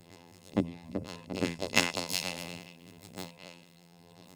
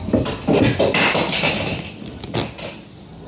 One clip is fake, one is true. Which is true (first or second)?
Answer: second